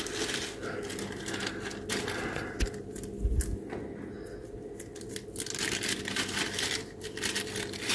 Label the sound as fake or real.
real